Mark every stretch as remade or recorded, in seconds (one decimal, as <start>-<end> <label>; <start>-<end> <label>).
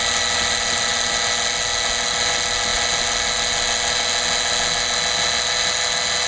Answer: 0.0-6.3 recorded